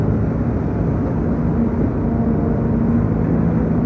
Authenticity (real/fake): real